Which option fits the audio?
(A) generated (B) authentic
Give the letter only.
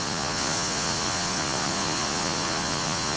A